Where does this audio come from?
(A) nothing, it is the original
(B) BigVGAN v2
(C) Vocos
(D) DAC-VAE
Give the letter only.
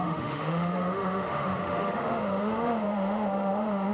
D